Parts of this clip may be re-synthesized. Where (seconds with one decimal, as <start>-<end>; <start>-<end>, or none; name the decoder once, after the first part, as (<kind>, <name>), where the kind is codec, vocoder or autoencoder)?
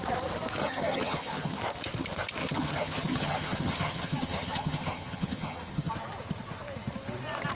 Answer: 0.6-1.6 (vocoder, HiFi-GAN); 2.4-5.9